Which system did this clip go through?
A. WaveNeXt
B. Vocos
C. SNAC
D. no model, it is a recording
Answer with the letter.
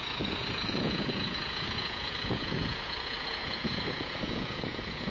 B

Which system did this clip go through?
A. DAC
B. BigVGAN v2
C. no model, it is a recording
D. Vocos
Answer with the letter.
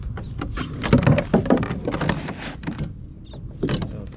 C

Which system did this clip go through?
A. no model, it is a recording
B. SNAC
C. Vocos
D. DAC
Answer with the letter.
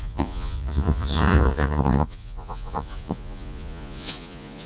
C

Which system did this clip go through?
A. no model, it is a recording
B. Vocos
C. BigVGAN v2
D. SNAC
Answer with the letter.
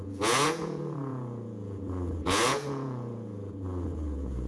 B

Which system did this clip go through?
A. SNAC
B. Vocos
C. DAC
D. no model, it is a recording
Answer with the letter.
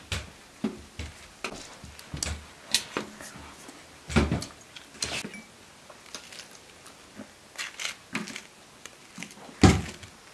D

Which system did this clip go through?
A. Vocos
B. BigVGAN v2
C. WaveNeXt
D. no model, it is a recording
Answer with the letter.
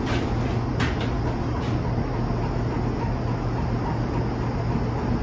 D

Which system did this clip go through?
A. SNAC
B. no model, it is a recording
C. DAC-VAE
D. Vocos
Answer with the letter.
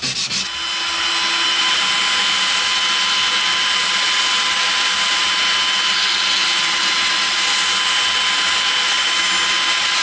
B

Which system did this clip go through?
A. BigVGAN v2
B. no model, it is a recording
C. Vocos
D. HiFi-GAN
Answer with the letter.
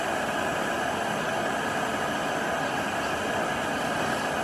B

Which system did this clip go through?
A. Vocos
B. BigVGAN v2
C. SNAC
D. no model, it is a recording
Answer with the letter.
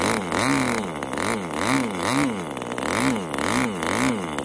D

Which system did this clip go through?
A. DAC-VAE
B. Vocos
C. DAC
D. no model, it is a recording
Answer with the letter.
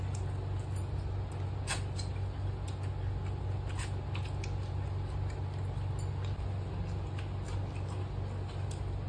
D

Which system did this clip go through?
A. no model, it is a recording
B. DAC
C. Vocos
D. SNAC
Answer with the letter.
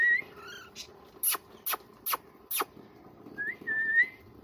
A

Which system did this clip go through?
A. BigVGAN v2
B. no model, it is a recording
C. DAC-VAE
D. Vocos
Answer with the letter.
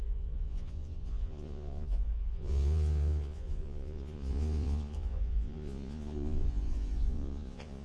D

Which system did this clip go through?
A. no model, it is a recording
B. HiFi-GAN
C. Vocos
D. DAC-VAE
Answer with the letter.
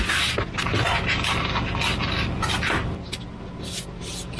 A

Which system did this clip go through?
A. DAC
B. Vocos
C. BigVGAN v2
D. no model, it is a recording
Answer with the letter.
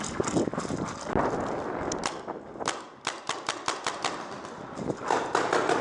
D